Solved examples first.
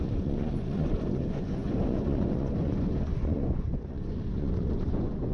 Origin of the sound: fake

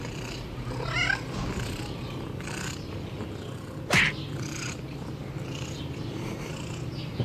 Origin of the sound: real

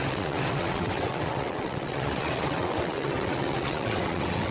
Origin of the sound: fake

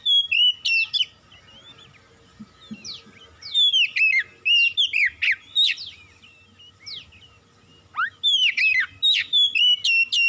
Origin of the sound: real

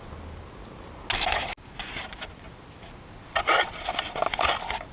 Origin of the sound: real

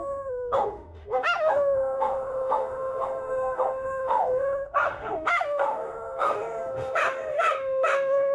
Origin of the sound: fake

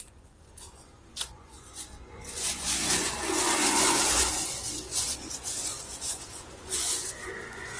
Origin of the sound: fake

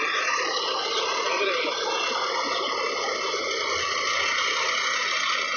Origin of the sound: real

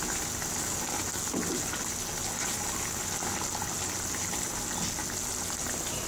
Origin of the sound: real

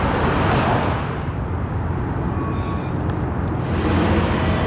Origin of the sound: real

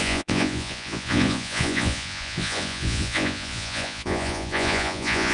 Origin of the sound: fake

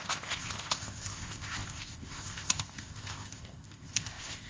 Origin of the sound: fake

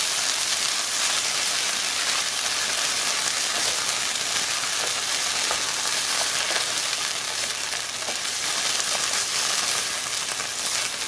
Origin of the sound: real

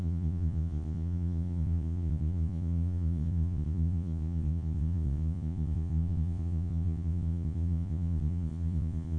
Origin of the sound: fake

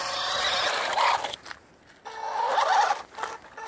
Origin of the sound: real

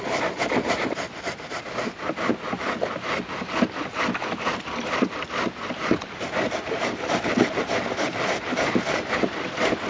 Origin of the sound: fake